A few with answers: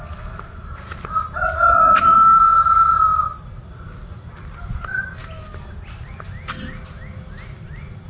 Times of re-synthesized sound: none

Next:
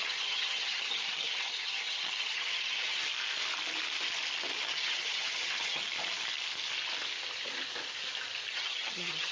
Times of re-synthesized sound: 0.0-3.0 (vocoder, HiFi-GAN); 4.6-5.8; 8.5-9.3